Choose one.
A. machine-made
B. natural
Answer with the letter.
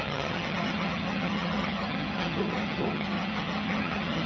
A